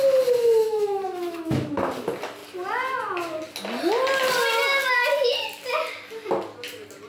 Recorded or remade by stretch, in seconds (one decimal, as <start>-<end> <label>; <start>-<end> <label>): 0.0-0.6 recorded; 0.6-1.7 remade; 1.7-7.1 recorded